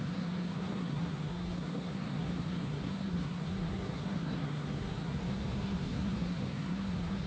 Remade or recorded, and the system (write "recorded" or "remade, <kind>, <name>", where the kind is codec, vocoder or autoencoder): remade, codec, SNAC